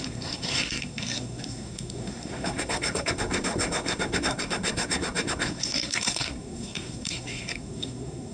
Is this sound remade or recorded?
remade